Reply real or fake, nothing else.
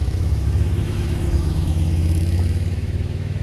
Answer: fake